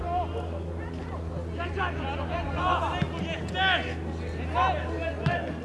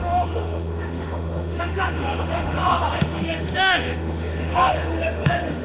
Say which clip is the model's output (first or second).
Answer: second